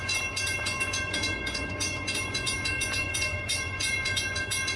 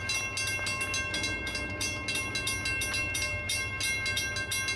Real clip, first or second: second